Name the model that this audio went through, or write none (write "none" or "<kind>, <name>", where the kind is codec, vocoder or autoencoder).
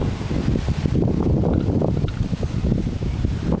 none